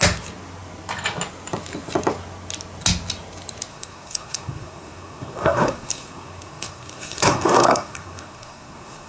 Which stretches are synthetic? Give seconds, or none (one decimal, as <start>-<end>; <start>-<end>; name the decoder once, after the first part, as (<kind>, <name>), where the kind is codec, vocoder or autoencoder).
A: 3.7-9.1 (codec, SNAC)